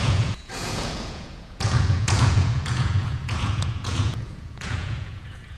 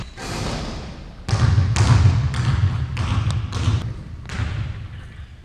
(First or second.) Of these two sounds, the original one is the second